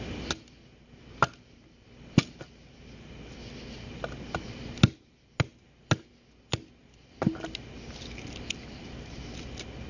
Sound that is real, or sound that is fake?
real